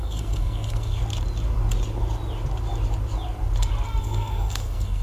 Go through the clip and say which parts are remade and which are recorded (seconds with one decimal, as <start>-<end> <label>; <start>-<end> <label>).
0.0-1.0 remade; 1.0-4.0 recorded; 4.0-5.0 remade

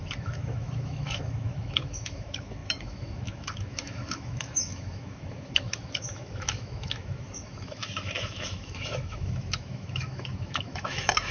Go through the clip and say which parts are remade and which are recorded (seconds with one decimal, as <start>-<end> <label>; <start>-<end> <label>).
0.0-11.3 remade